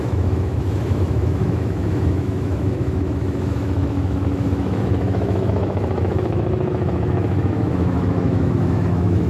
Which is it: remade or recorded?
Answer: remade